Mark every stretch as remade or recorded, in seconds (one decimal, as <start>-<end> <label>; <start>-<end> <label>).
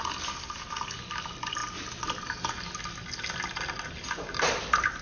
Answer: 0.0-5.0 recorded